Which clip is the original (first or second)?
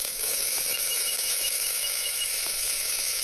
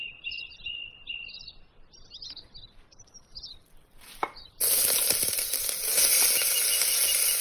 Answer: second